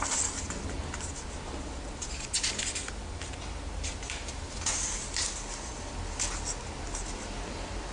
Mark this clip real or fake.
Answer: real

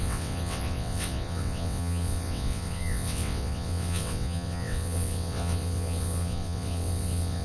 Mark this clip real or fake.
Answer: fake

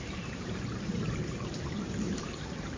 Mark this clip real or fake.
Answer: fake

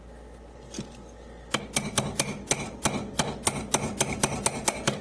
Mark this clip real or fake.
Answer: real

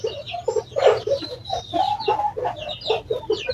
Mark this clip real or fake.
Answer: real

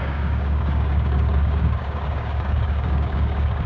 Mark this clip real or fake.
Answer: fake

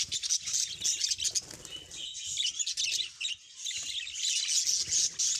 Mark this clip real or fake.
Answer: real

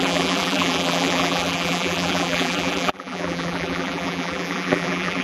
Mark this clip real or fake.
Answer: fake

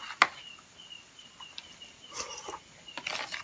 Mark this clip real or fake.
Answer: real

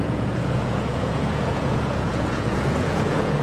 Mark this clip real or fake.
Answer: fake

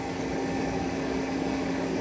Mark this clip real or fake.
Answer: fake